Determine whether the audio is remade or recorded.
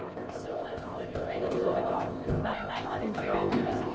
remade